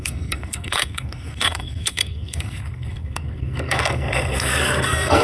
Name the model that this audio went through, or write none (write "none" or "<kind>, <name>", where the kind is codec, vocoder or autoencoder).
codec, SNAC